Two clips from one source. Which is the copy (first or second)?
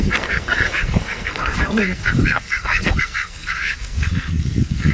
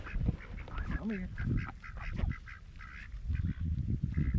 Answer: first